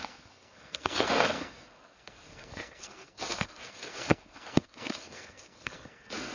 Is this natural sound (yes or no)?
no